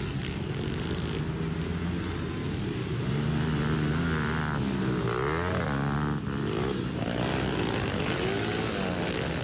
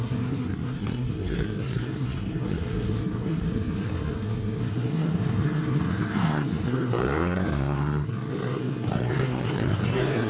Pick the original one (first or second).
first